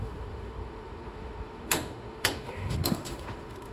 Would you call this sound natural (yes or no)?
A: no